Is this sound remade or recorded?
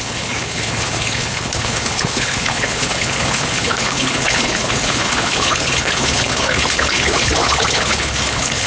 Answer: remade